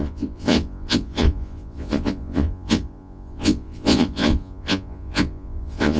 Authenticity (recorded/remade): remade